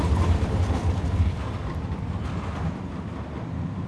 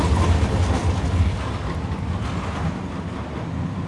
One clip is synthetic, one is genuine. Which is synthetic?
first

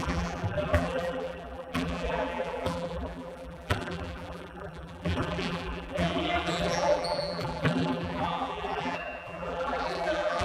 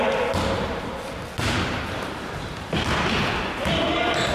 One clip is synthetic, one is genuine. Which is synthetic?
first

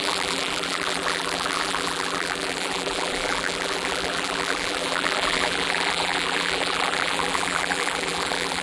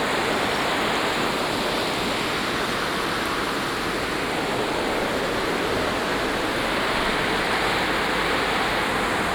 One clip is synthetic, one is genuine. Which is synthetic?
first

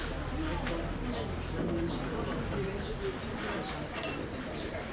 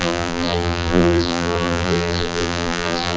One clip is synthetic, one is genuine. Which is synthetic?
second